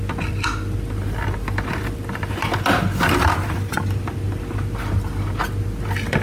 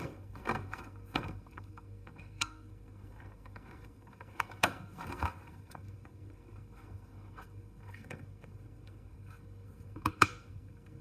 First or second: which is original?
first